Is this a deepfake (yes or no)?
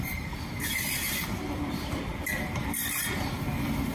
yes